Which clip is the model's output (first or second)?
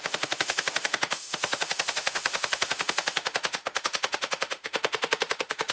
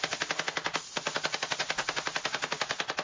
first